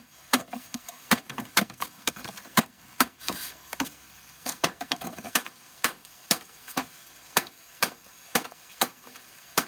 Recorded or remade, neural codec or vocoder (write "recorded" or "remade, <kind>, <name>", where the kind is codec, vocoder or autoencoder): remade, codec, SNAC